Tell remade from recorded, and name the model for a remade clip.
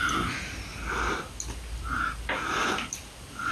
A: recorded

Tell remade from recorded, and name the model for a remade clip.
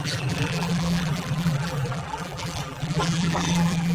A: remade, vocoder, BigVGAN v2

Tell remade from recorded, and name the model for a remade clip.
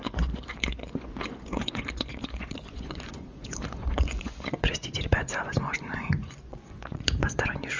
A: remade, vocoder, Vocos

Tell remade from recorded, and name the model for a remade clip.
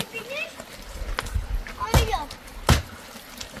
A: recorded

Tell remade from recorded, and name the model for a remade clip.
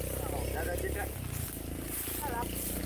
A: recorded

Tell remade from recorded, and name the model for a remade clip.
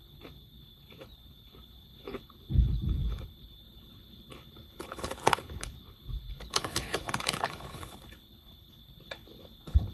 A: remade, codec, HILCodec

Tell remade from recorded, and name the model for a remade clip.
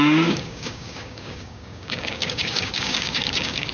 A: remade, codec, DAC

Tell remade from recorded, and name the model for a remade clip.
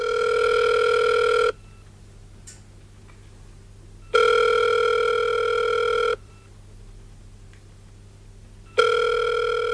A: recorded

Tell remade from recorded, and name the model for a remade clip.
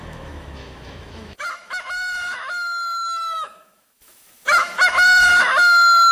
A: remade, autoencoder, DAC-VAE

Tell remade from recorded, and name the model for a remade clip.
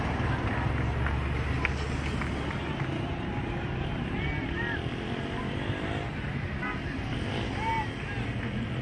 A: recorded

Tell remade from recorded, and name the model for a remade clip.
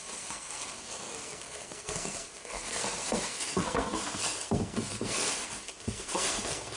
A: remade, codec, SNAC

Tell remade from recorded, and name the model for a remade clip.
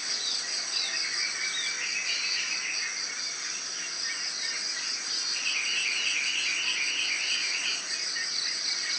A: recorded